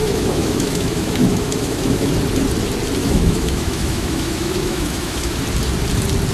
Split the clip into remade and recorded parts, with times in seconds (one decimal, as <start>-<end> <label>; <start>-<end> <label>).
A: 0.0-2.1 remade; 2.1-3.0 recorded; 3.0-5.4 remade; 5.4-6.3 recorded